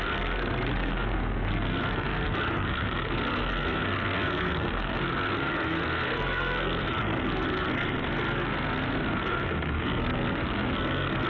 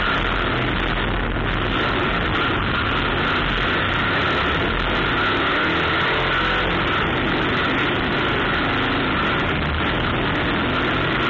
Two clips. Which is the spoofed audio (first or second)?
first